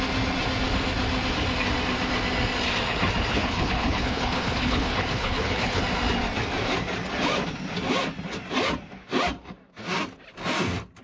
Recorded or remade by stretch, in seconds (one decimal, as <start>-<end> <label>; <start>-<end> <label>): 0.0-3.3 recorded; 3.3-5.8 remade; 5.8-11.0 recorded